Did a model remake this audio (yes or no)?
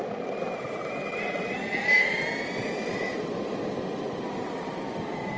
no